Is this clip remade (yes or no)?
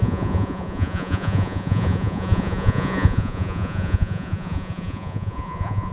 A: yes